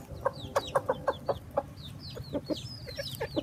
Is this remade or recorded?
recorded